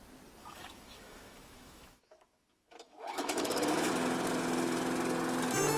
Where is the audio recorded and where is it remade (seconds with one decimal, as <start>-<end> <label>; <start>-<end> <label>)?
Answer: 0.0-0.4 recorded; 0.4-3.9 remade; 3.9-5.8 recorded

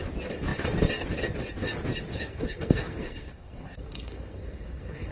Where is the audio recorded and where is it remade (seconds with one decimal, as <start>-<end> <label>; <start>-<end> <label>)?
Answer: 0.0-2.1 recorded; 2.1-5.1 remade

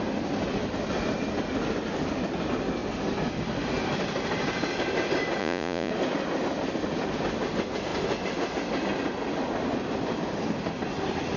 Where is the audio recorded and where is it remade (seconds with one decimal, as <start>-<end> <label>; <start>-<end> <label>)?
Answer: 0.0-5.4 recorded; 5.4-5.9 remade; 5.9-11.4 recorded

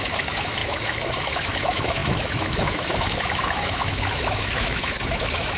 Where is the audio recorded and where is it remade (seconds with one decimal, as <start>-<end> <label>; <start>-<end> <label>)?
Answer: 0.0-5.6 remade

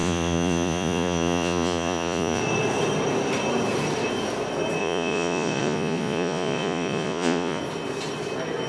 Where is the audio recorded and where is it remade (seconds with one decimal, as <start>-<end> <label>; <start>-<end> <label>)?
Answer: 0.0-2.4 remade; 2.4-4.8 recorded; 4.8-7.6 remade; 7.6-8.7 recorded